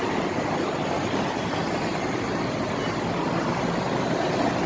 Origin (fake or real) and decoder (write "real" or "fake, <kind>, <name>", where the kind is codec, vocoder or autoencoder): real